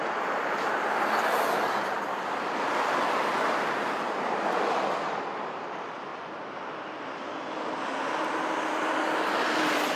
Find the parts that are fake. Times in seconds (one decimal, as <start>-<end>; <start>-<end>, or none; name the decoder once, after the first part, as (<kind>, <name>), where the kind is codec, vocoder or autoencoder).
none